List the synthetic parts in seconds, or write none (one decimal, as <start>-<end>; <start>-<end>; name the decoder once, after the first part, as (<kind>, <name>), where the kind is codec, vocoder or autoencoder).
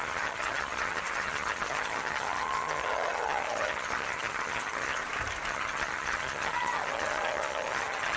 0.0-5.0 (vocoder, HiFi-GAN); 5.5-8.2